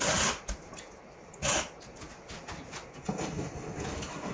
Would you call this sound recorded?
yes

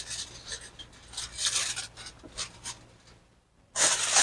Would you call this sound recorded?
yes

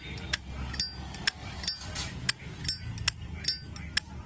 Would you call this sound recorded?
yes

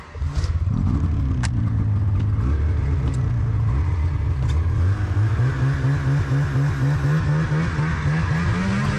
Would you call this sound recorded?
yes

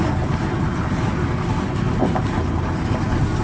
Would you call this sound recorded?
yes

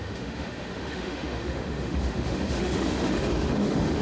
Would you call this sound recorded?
no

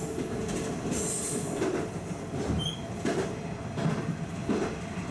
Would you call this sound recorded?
yes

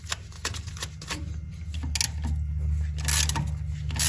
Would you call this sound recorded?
yes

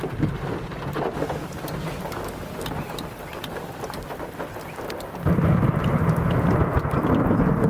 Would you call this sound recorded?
yes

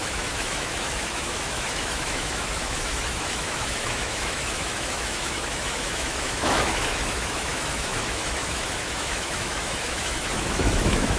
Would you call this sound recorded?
no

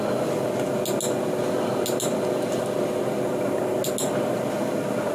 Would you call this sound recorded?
yes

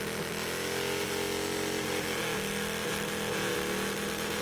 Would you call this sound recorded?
yes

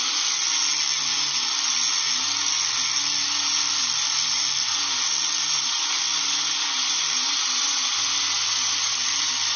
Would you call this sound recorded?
yes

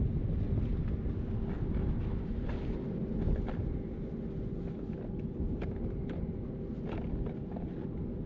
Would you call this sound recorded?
yes